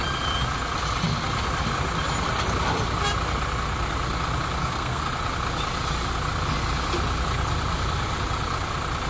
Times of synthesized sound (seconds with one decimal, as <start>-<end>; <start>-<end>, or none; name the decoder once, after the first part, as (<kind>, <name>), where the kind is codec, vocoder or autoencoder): 4.6-5.1 (codec, SNAC)

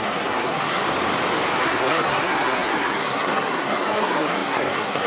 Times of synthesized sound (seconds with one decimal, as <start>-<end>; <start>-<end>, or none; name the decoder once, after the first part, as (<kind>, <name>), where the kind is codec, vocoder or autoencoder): 0.0-0.8 (codec, SNAC); 1.6-5.1

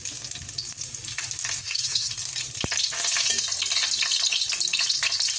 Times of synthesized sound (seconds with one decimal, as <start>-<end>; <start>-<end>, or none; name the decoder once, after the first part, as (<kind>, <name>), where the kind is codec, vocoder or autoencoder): 1.6-2.1 (codec, SNAC)

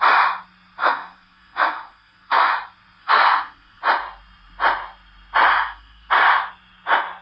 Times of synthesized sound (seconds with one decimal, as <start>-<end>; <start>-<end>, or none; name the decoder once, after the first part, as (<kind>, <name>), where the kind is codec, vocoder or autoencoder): 0.8-2.5 (codec, SNAC); 3.0-3.8; 5.5-6.1

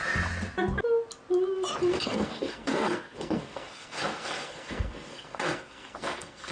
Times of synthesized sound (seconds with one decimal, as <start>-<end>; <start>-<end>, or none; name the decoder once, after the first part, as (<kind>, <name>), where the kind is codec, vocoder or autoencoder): 1.9-6.5 (codec, SNAC)

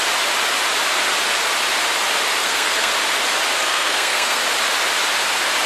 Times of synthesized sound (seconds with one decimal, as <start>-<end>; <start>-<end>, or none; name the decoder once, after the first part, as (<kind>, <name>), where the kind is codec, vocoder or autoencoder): 2.4-2.9 (codec, SNAC); 3.6-4.4

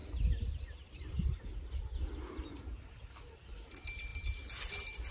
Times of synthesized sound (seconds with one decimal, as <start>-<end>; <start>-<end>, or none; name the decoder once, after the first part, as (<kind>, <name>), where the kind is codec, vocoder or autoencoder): none

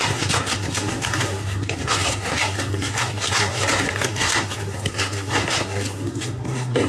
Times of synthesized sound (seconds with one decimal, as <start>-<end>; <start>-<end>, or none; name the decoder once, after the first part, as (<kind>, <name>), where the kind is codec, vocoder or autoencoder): 0.0-6.9 (codec, SNAC)